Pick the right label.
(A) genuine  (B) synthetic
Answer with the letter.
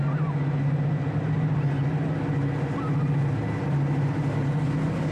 A